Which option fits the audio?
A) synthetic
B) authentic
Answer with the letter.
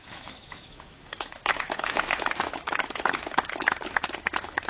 A